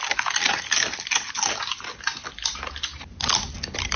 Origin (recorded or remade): recorded